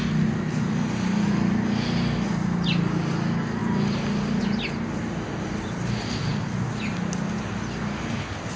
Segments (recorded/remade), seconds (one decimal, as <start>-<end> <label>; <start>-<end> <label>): 0.0-8.6 recorded